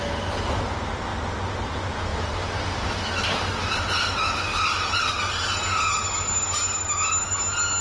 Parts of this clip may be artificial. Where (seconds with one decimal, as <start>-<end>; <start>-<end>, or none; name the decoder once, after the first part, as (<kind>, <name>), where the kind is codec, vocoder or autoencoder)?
none